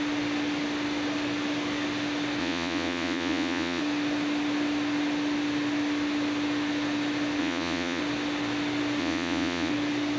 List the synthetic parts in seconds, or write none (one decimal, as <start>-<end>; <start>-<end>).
2.4-3.8; 7.4-8.0; 9.0-9.7